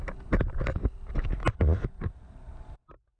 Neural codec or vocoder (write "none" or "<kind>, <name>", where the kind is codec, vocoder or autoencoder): none